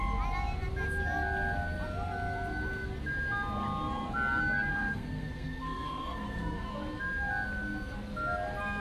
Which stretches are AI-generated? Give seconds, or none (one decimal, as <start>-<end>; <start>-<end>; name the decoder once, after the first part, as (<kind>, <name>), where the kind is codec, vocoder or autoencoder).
4.7-6.7 (codec, SNAC)